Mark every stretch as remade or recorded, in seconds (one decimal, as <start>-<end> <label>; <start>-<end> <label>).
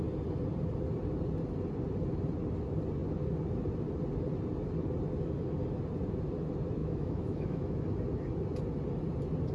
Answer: 0.0-6.8 recorded; 6.8-7.8 remade; 7.8-9.5 recorded